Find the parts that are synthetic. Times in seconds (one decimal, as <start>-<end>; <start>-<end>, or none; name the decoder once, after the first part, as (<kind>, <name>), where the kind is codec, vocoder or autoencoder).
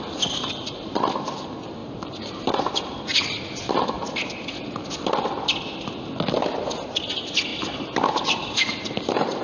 none